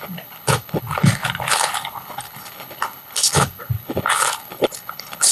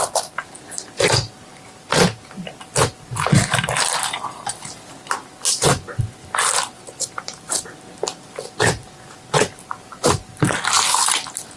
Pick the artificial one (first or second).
first